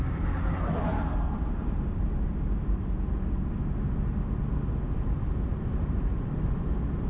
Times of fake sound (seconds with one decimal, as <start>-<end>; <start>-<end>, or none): 5.5-7.1

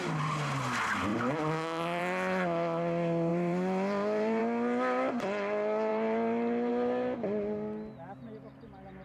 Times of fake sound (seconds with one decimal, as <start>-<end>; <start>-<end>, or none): 1.1-2.0; 3.3-4.4; 5.9-6.7

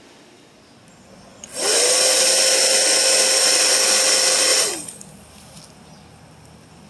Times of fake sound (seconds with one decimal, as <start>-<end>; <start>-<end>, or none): none

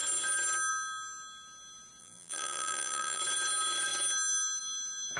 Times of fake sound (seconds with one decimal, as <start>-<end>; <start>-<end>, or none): 2.0-3.2

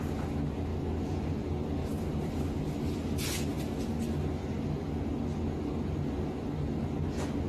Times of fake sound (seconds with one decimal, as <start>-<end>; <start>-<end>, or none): 1.8-3.5

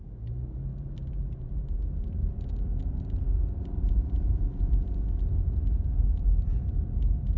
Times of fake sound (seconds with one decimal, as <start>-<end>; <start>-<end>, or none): 0.0-2.3; 2.8-7.0